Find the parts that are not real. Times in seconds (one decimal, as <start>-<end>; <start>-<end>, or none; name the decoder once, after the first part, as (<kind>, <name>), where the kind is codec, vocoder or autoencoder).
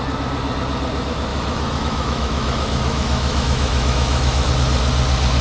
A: 1.3-4.5 (autoencoder, DAC-VAE)